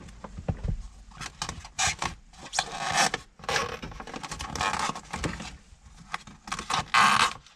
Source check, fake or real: real